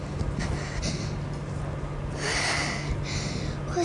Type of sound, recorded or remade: recorded